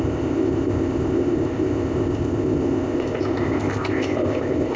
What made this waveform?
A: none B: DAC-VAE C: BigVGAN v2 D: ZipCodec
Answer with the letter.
D